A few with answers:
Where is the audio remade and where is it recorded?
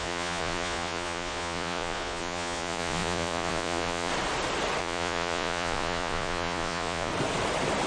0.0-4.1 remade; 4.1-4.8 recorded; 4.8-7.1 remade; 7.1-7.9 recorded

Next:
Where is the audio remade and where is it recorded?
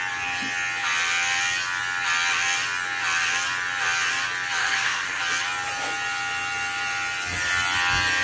0.0-4.6 recorded; 4.6-5.2 remade; 5.2-8.2 recorded